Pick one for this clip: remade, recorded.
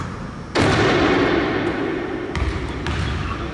recorded